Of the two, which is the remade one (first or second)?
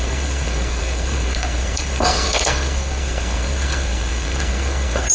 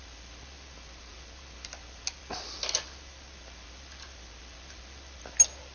first